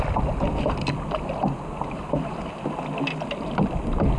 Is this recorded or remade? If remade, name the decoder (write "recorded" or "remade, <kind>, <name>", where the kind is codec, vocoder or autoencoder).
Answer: recorded